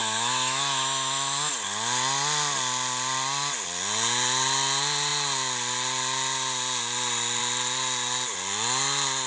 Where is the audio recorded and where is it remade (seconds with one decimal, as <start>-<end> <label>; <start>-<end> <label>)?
0.0-1.5 remade; 1.5-9.3 recorded